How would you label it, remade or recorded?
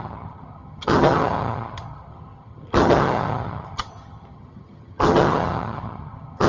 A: remade